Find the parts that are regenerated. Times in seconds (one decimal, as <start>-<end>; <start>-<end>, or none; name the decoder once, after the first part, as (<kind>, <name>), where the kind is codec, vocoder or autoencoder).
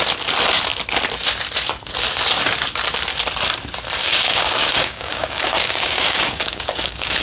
4.0-7.2 (codec, DAC)